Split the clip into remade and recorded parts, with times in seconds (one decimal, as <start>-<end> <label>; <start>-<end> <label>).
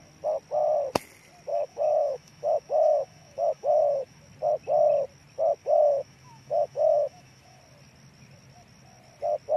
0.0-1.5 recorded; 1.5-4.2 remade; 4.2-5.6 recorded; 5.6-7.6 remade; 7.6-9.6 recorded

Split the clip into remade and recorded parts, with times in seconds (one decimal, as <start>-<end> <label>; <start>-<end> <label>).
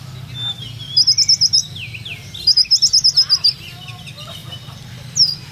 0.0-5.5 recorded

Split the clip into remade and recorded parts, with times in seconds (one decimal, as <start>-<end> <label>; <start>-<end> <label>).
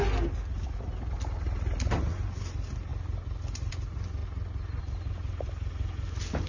0.0-6.5 recorded